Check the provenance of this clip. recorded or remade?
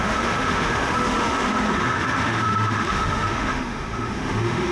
remade